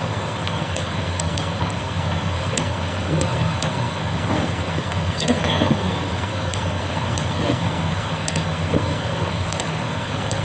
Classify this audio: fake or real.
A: fake